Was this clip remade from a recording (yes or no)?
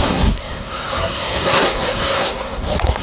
yes